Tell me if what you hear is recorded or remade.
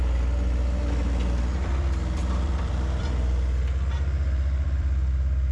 remade